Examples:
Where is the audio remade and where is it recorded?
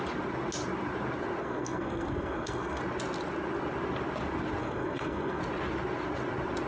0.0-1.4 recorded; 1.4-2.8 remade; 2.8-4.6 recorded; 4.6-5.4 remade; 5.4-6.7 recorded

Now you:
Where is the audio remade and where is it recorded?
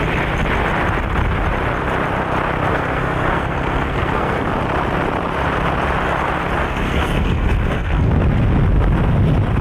0.0-2.7 recorded; 2.7-4.5 remade; 4.5-6.6 recorded; 6.6-8.1 remade; 8.1-9.6 recorded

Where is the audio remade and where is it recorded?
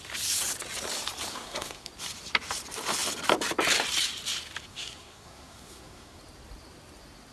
0.0-1.3 recorded; 1.3-1.9 remade; 1.9-4.7 recorded; 4.7-6.2 remade; 6.2-7.3 recorded